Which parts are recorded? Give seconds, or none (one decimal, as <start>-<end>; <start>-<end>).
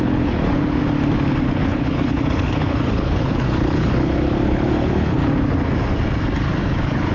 0.8-1.4; 5.2-6.5